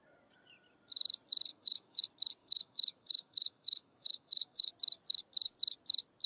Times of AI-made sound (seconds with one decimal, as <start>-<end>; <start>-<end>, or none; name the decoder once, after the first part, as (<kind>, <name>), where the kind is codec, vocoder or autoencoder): 1.5-2.0 (autoencoder, DAC-VAE); 2.4-4.7